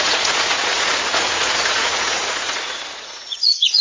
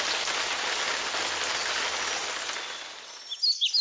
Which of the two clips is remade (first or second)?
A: first